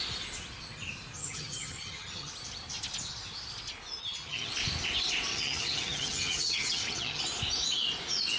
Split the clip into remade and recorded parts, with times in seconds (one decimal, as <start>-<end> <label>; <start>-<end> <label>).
0.0-1.2 recorded; 1.2-2.3 remade; 2.3-4.0 recorded; 4.0-4.5 remade; 4.5-5.3 recorded; 5.3-7.2 remade; 7.2-8.4 recorded